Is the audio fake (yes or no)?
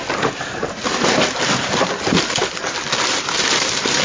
no